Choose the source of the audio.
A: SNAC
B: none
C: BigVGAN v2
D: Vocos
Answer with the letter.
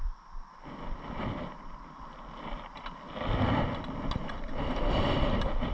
B